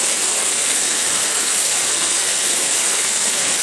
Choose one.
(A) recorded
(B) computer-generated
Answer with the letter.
B